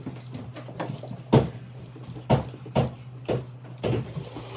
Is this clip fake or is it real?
real